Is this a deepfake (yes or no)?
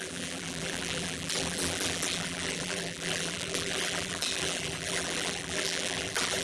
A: yes